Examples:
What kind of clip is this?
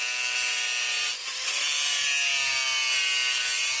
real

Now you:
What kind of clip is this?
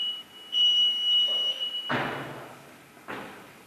real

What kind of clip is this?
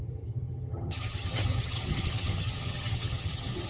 fake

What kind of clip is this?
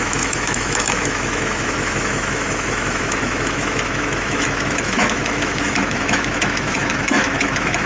fake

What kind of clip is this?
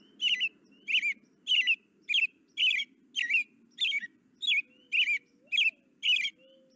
real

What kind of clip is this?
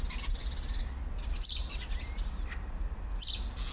real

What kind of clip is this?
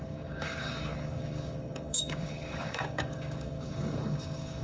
fake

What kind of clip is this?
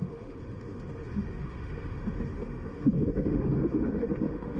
fake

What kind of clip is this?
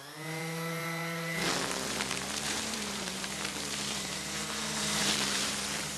fake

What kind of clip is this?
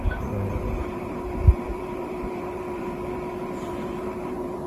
fake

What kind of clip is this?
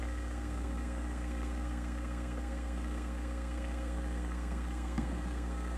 fake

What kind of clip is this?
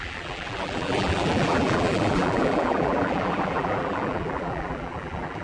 fake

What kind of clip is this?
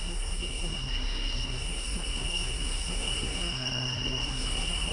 fake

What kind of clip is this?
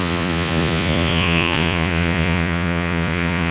fake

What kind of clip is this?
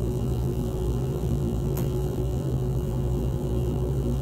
fake